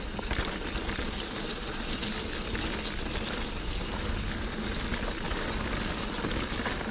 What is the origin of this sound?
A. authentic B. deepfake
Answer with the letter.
A